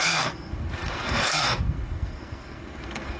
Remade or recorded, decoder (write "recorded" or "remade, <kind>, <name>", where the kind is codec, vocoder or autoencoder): remade, codec, SNAC